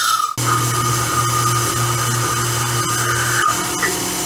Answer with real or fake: real